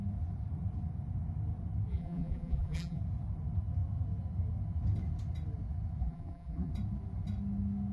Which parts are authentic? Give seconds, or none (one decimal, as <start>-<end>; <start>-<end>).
0.0-1.9; 3.0-6.0; 6.7-7.9